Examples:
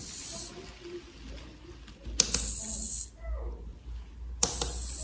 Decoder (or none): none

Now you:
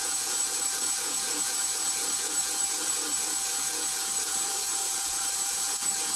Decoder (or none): vocoder, Vocos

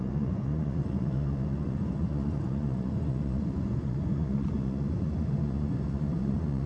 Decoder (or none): vocoder, Vocos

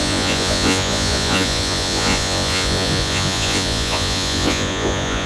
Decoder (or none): vocoder, Vocos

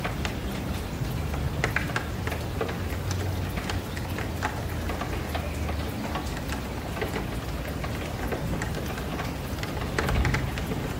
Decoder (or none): none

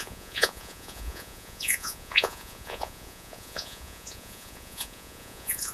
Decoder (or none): vocoder, Vocos